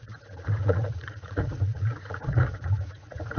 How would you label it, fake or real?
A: fake